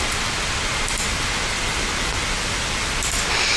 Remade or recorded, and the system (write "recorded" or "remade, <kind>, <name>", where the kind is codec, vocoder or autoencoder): recorded